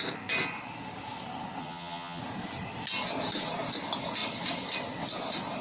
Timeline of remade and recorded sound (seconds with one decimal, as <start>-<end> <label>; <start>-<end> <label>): 0.0-1.6 recorded; 1.6-2.2 remade; 2.2-5.6 recorded